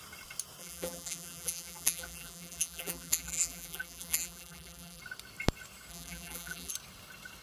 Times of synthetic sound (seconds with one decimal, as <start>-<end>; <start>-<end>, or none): 0.6-5.0; 5.9-6.7